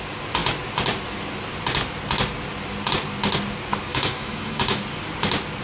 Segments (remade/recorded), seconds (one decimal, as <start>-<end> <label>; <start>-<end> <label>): 0.0-3.9 recorded; 3.9-4.8 remade; 4.8-5.6 recorded